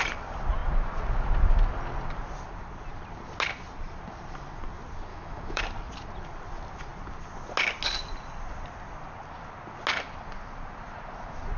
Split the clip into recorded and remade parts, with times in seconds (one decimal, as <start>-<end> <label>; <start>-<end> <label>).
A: 0.0-5.1 recorded; 5.1-5.6 remade; 5.6-11.6 recorded